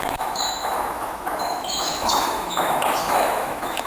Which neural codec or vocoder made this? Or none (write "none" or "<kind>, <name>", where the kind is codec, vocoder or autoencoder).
autoencoder, DAC-VAE